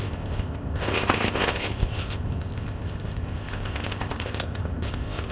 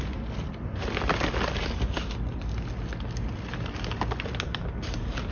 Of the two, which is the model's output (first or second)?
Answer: first